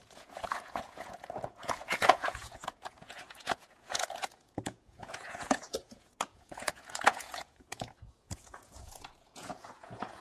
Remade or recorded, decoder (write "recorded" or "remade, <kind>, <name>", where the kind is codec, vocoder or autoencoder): remade, vocoder, Vocos